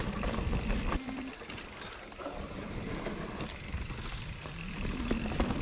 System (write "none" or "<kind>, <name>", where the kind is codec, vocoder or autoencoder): vocoder, BigVGAN v2